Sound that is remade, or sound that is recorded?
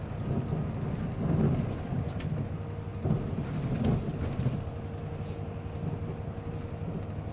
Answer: recorded